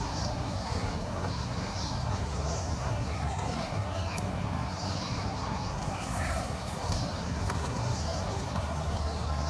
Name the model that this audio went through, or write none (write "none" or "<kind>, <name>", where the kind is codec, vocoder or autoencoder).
codec, SNAC